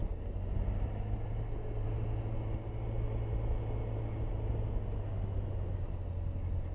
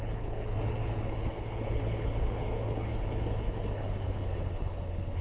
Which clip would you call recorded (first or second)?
first